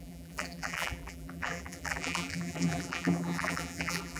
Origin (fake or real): fake